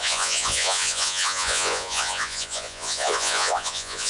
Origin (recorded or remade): remade